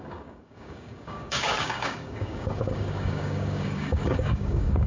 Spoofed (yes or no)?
yes